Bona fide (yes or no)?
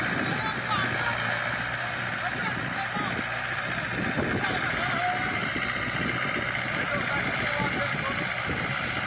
yes